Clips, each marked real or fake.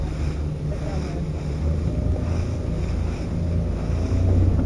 real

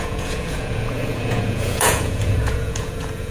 fake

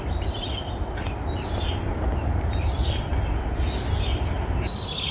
real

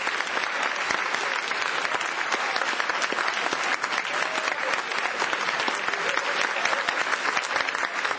real